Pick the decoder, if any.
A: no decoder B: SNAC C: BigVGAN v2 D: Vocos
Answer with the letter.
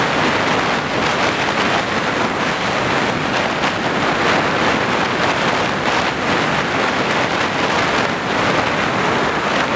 A